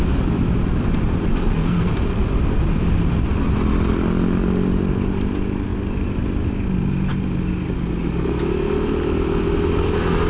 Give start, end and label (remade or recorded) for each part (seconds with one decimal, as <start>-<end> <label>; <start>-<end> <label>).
0.0-1.3 recorded; 1.3-1.9 remade; 1.9-10.3 recorded